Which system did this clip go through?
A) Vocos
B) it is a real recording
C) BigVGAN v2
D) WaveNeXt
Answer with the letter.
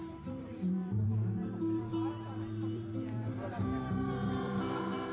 C